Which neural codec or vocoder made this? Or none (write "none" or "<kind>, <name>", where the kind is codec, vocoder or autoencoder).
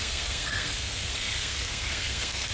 codec, SNAC